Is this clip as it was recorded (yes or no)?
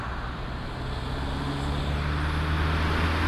yes